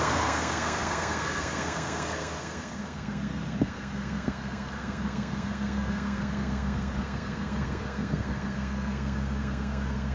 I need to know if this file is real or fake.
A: fake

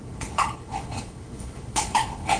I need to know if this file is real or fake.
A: fake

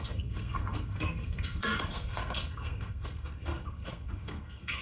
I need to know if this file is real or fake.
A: fake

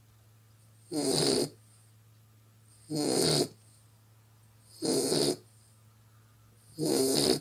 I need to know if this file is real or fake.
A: real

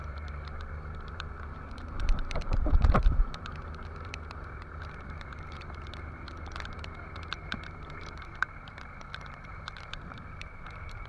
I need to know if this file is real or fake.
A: fake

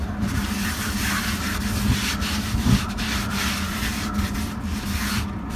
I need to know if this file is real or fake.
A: real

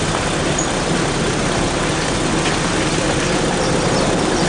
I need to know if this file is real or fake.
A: real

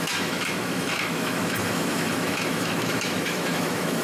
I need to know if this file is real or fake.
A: fake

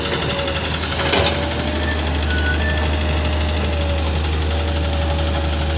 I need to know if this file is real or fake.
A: real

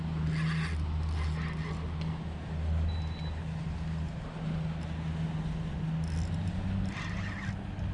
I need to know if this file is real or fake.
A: real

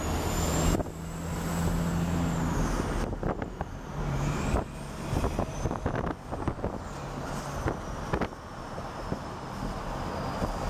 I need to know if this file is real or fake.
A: real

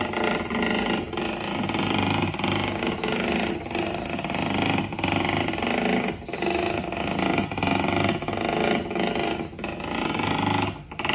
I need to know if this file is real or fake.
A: real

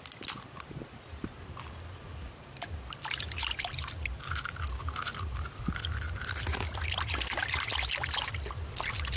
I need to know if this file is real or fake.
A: fake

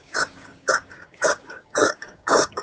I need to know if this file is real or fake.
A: fake